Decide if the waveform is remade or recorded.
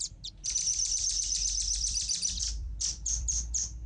remade